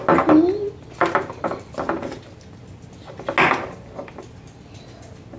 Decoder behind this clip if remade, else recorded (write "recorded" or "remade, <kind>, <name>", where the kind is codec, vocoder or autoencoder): recorded